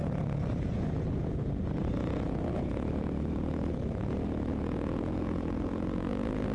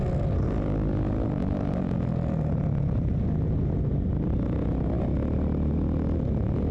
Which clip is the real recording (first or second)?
second